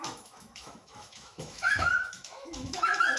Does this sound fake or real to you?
fake